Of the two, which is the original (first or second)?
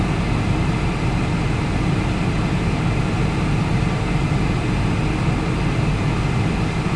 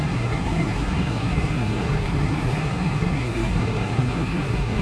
first